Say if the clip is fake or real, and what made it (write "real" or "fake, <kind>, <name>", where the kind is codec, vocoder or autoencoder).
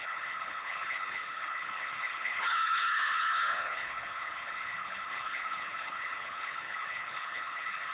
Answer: fake, codec, HILCodec